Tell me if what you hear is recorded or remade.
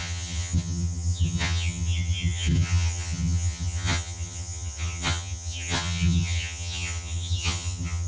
remade